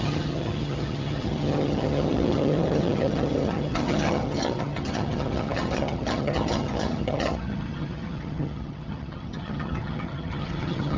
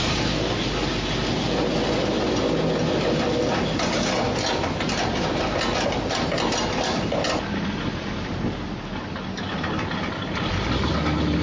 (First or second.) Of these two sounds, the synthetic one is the first